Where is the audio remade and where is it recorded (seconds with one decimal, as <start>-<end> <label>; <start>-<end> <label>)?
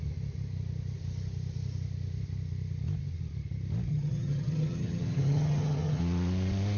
0.0-3.9 recorded; 3.9-6.0 remade; 6.0-6.8 recorded